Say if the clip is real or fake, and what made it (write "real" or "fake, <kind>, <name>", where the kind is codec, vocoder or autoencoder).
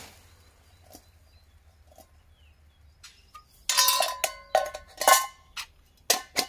real